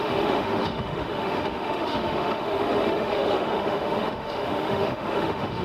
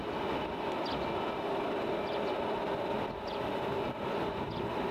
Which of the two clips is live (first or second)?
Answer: second